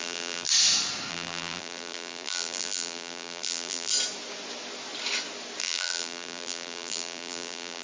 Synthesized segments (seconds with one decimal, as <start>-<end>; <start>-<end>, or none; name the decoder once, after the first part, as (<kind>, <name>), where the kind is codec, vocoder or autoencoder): 0.0-0.5 (vocoder, BigVGAN v2); 1.1-3.9; 5.6-7.8